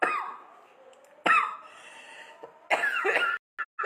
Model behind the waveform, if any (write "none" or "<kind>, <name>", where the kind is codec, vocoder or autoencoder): none